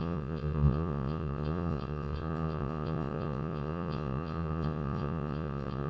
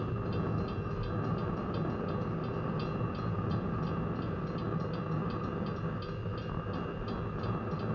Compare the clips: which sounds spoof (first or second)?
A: first